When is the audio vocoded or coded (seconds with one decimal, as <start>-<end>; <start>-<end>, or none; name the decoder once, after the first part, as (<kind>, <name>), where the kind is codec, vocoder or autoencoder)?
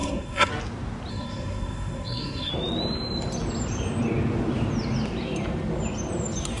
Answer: 0.0-0.5 (codec, SNAC); 1.1-2.5